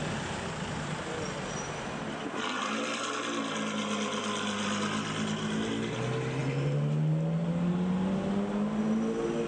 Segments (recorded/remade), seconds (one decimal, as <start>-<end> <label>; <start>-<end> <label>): 0.0-9.5 recorded